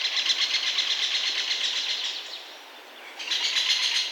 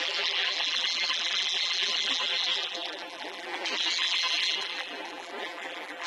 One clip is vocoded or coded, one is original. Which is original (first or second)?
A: first